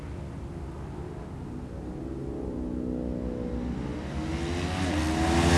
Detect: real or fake real